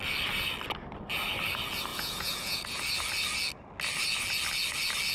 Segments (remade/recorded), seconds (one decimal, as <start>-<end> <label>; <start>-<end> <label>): 0.0-1.9 recorded; 1.9-2.8 remade; 2.8-5.1 recorded